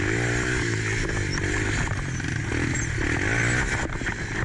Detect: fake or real real